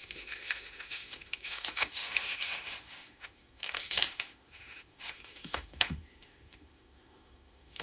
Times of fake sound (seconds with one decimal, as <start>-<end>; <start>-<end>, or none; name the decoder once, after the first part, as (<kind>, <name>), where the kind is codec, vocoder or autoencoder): 0.0-7.8 (autoencoder, DAC-VAE)

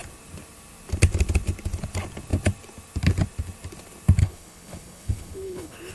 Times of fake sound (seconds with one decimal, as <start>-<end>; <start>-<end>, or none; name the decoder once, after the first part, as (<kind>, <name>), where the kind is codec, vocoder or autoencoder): 4.2-5.9 (codec, HILCodec)

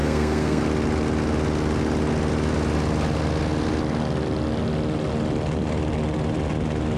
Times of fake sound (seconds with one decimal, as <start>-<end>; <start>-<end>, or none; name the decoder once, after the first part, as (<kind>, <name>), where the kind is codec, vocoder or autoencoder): 0.0-0.6 (codec, SNAC)